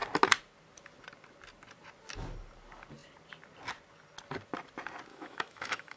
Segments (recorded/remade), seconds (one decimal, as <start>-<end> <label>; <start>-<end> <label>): 0.0-5.1 recorded; 5.1-6.0 remade